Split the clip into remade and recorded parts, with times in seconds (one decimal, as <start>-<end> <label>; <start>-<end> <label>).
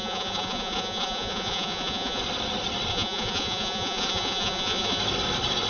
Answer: 0.0-2.2 remade; 2.2-2.9 recorded; 2.9-5.0 remade; 5.0-5.7 recorded